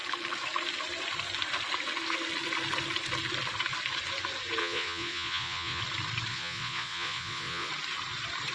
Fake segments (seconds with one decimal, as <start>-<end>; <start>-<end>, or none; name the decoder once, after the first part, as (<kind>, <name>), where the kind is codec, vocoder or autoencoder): 4.6-5.8 (vocoder, Vocos); 6.3-7.7